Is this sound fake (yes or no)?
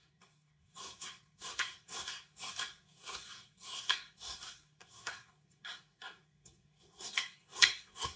yes